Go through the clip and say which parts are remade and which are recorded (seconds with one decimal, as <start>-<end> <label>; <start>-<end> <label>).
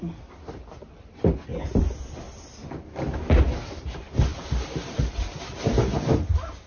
0.0-4.3 recorded; 4.3-4.9 remade; 4.9-6.7 recorded